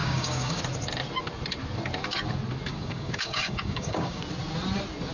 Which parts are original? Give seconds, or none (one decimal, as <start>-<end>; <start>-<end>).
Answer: 0.6-2.7; 4.2-5.1